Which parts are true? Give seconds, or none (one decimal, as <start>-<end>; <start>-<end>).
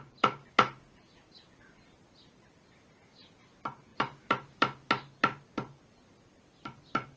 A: 0.0-0.4; 1.0-3.9; 4.9-7.2